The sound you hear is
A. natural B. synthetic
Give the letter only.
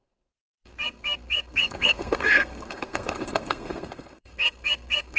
B